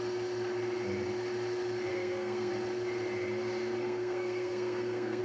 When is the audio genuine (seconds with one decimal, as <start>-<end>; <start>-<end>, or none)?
0.0-1.9; 2.5-3.8